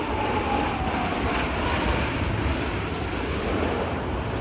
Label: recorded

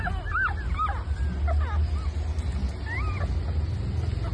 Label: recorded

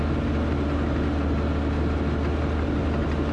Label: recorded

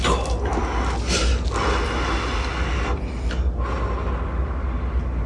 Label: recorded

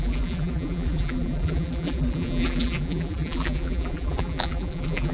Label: remade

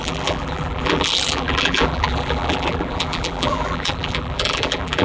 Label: remade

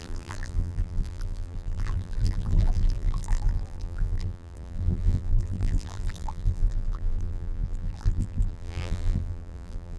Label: remade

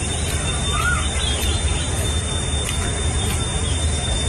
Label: recorded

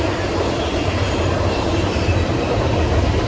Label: remade